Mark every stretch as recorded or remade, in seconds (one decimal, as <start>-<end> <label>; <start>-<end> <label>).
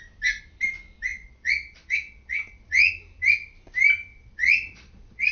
0.0-1.1 recorded; 1.1-2.9 remade; 2.9-4.1 recorded; 4.1-5.3 remade